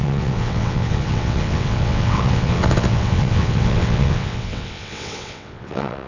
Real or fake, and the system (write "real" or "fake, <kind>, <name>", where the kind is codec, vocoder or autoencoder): fake, vocoder, WaveNeXt